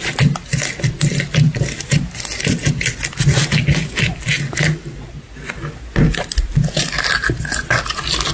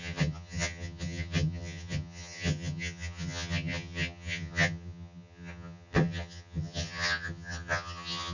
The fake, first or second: second